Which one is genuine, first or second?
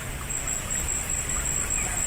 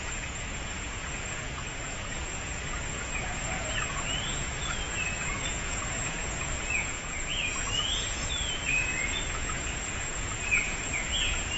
first